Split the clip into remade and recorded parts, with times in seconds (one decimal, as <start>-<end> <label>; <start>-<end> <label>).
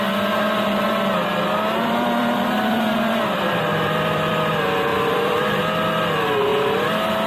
0.0-1.3 recorded; 1.3-4.5 remade; 4.5-4.9 recorded; 4.9-5.6 remade; 5.6-7.3 recorded